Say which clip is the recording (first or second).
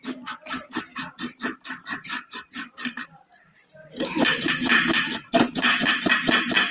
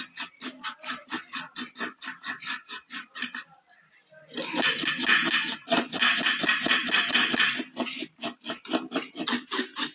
second